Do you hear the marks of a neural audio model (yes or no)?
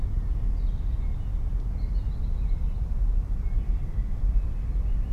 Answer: no